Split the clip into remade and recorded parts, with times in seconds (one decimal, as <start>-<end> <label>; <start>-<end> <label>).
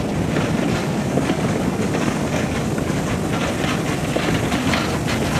0.0-0.8 recorded; 0.8-3.1 remade; 3.1-5.4 recorded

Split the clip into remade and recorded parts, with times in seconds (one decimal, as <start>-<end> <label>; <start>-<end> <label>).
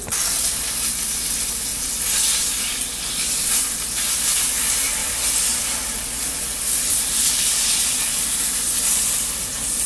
0.0-5.0 recorded; 5.0-9.5 remade; 9.5-9.9 recorded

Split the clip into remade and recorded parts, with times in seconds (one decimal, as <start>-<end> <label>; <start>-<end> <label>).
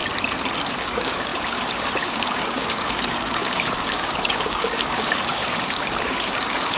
0.0-0.7 recorded; 0.7-6.8 remade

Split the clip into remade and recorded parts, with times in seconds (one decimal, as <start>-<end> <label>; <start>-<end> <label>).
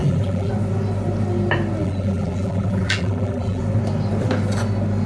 0.0-0.5 remade; 0.5-1.8 recorded; 1.8-3.6 remade; 3.6-5.1 recorded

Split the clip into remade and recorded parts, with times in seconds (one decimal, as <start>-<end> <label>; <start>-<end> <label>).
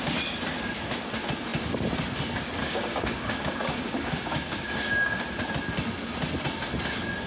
0.0-2.6 recorded; 2.6-5.2 remade; 5.2-7.3 recorded